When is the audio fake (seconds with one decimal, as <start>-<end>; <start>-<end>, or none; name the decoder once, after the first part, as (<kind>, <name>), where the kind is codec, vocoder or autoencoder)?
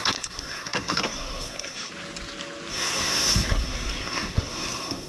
0.0-1.9 (codec, SNAC); 2.7-5.1